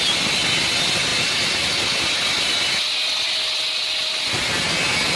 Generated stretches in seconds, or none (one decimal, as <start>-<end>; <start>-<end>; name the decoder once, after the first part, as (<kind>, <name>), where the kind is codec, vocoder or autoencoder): none